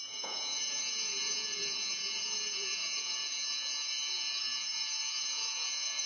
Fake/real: fake